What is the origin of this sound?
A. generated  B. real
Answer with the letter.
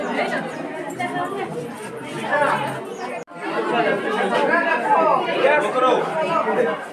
B